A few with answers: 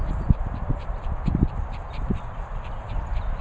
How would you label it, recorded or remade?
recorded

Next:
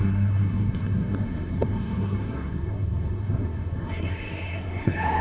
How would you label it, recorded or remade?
remade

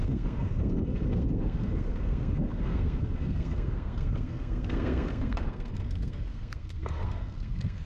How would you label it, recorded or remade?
remade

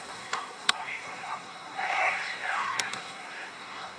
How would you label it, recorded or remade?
remade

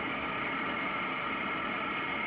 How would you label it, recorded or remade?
remade